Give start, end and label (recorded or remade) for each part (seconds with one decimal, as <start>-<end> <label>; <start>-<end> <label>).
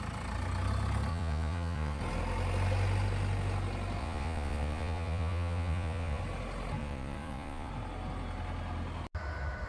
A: 0.0-1.1 recorded; 1.1-2.0 remade; 2.0-4.0 recorded; 4.0-6.2 remade; 6.2-6.8 recorded; 6.8-7.7 remade; 7.7-9.7 recorded